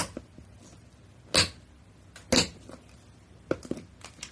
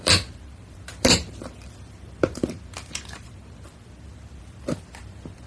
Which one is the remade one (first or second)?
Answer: second